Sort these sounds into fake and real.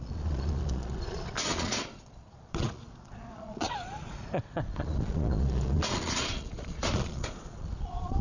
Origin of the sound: fake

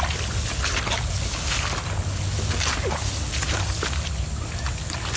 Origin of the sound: real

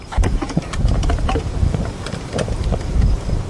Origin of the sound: fake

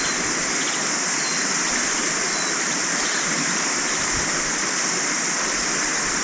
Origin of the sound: real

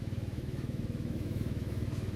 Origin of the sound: fake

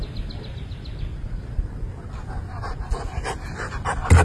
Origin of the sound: real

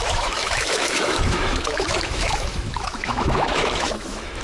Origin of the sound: fake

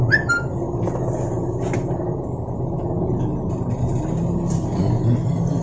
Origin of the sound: real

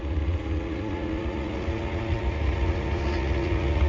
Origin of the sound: fake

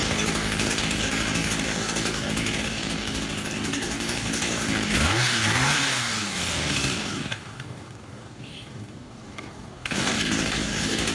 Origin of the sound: fake